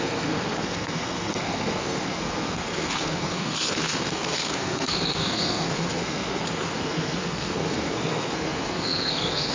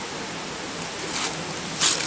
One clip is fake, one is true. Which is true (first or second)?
second